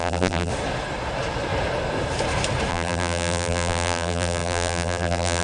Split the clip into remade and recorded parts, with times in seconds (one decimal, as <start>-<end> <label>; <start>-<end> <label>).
0.0-0.5 remade; 0.5-2.7 recorded; 2.7-5.4 remade

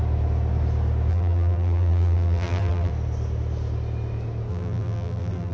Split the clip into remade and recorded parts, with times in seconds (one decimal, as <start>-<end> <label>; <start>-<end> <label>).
0.0-1.1 recorded; 1.1-2.9 remade; 2.9-4.5 recorded; 4.5-5.5 remade

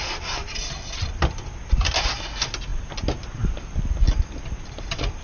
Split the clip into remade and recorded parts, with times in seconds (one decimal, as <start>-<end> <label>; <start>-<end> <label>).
0.0-5.2 recorded

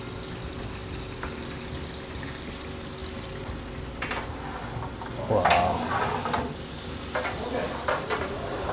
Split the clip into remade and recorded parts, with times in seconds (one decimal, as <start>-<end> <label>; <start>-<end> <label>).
0.0-8.7 recorded

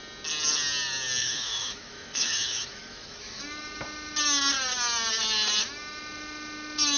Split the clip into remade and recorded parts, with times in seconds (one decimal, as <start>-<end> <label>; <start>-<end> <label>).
0.0-1.2 recorded; 1.2-3.4 remade; 3.4-7.0 recorded

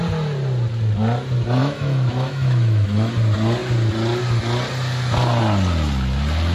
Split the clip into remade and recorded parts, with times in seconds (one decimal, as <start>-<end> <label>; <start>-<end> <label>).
0.0-1.6 recorded; 1.6-3.1 remade; 3.1-6.5 recorded

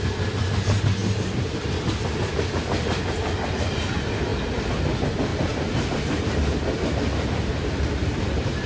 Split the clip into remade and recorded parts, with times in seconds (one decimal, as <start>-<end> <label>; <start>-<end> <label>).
0.0-5.3 recorded; 5.3-8.7 remade